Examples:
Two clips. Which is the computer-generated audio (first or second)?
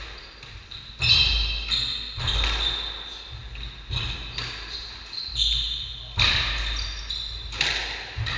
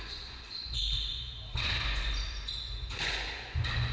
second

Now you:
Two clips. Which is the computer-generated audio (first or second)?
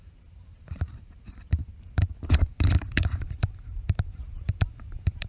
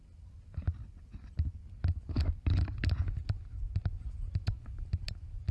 first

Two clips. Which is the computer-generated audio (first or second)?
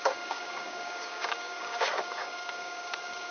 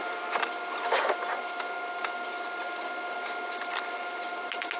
first